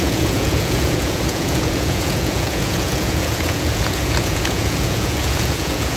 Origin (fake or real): fake